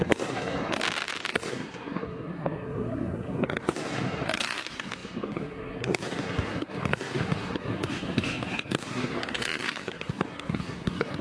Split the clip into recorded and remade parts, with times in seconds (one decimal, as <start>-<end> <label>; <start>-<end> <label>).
0.0-0.8 remade; 0.8-1.3 recorded; 1.3-11.2 remade